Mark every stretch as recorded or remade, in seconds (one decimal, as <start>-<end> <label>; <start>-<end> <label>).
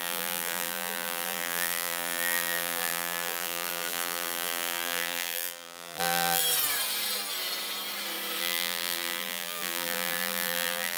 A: 0.0-6.4 remade; 6.4-8.4 recorded; 8.4-11.0 remade